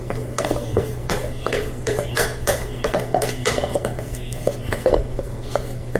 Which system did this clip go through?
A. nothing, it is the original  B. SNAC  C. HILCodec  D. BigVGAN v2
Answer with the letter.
B